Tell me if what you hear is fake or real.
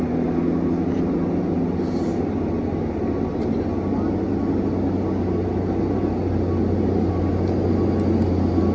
real